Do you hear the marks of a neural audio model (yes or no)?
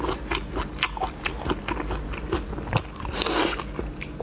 no